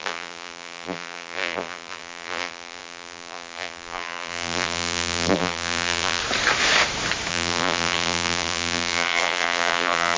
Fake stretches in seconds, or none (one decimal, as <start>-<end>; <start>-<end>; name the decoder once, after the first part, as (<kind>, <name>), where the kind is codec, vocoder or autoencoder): 0.0-6.2 (vocoder, BigVGAN v2); 7.3-10.2